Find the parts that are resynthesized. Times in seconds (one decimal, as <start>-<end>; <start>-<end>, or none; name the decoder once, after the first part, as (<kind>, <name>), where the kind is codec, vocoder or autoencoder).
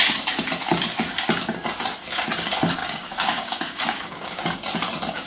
2.8-4.4 (codec, DAC)